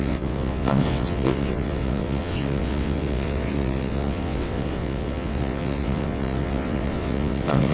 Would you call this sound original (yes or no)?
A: no